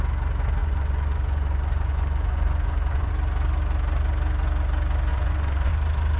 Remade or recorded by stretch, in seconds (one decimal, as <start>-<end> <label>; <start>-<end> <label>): 0.0-0.6 recorded; 0.6-3.1 remade; 3.1-5.1 recorded; 5.1-5.7 remade; 5.7-6.2 recorded